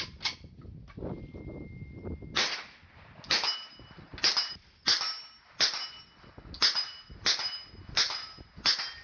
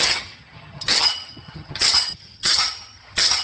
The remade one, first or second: second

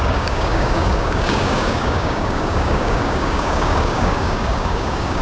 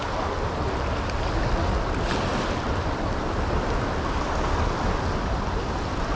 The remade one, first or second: first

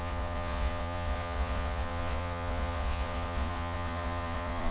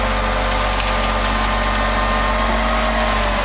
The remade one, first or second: first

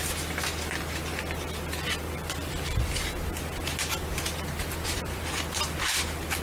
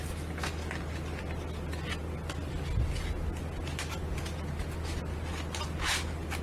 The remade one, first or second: first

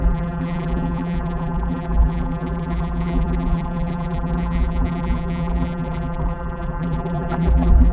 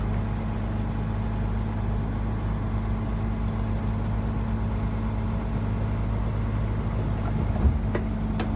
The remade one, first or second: first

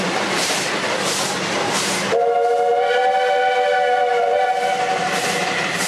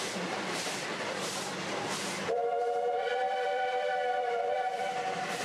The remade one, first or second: second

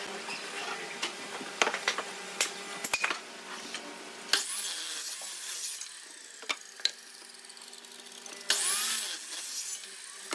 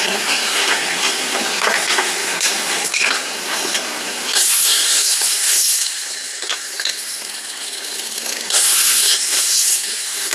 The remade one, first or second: second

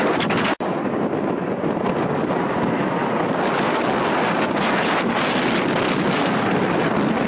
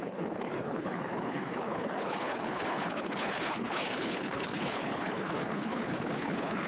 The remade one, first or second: second